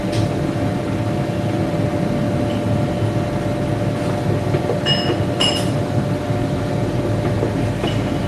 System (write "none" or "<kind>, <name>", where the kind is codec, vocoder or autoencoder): none